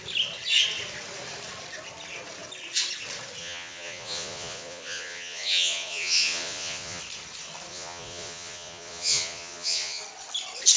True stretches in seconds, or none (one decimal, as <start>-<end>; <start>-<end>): 0.0-3.4; 7.0-7.7; 10.0-10.8